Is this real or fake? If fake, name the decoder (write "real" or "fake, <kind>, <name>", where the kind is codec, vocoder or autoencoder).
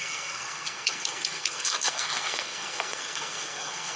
fake, codec, SNAC